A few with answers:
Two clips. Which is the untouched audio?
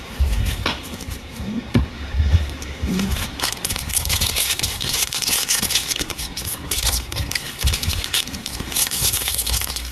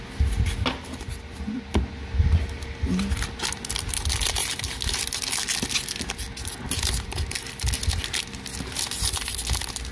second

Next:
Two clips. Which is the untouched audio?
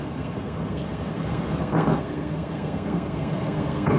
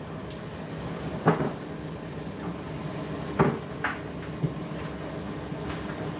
second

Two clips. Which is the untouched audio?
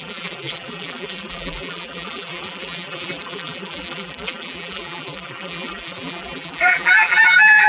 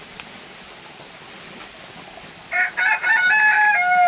second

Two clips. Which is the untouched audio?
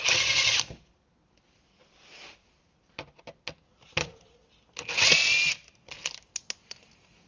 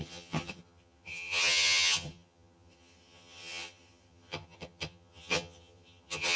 first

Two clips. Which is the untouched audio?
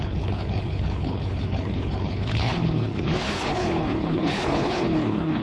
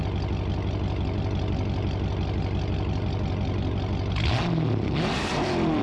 second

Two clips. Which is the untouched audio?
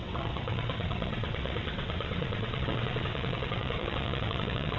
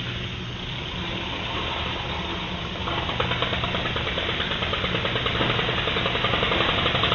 second